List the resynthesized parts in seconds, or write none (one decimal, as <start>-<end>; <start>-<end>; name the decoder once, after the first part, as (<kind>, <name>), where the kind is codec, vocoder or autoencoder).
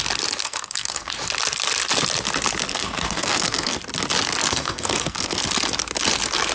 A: 0.4-1.1 (codec, SNAC); 2.7-3.8; 4.4-5.4